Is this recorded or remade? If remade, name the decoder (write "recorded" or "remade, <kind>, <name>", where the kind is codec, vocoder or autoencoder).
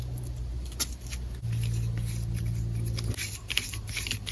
recorded